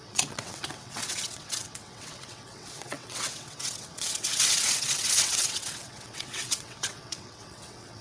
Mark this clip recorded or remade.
remade